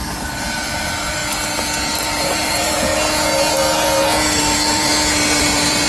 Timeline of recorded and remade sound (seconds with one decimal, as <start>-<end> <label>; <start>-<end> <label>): 0.0-1.2 remade; 1.2-1.9 recorded; 1.9-2.9 remade; 2.9-4.4 recorded; 4.4-4.9 remade; 4.9-5.4 recorded; 5.4-5.9 remade